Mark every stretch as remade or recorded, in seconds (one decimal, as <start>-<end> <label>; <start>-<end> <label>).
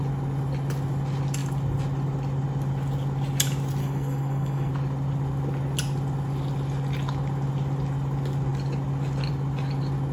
0.0-3.8 recorded; 3.8-4.7 remade; 4.7-10.1 recorded